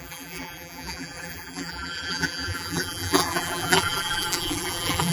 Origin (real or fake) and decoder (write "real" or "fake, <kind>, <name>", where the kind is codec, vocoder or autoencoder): fake, vocoder, BigVGAN v2